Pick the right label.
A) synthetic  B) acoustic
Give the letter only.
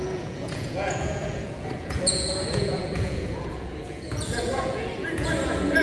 A